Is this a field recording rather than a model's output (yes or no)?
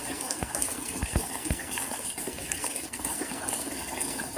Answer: no